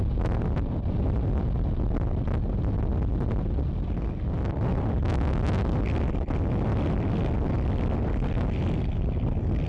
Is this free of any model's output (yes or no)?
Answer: yes